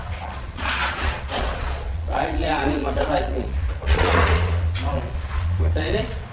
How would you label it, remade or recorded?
remade